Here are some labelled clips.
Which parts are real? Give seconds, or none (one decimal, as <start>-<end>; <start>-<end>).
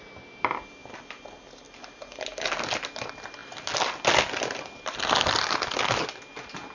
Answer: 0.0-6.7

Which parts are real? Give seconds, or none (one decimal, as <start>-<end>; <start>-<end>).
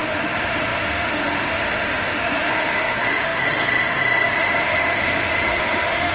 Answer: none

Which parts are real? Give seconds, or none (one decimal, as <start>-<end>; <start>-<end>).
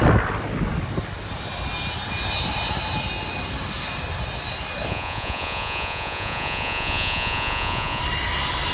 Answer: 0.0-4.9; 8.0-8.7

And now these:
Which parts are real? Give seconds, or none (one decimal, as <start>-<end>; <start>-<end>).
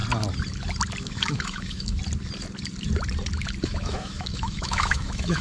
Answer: 0.0-1.0; 2.0-3.6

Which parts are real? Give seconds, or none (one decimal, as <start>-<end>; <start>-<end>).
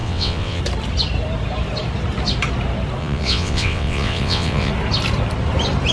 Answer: 0.6-3.0; 4.7-5.9